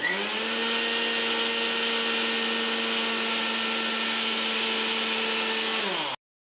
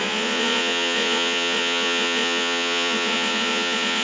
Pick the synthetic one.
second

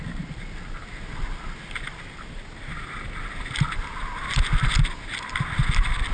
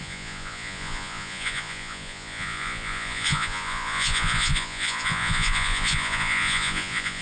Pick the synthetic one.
second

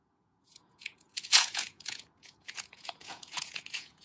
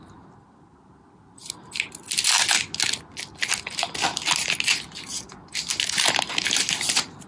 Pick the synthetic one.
first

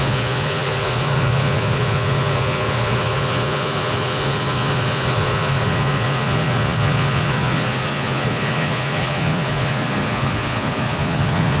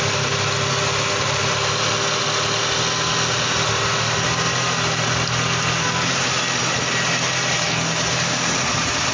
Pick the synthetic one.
first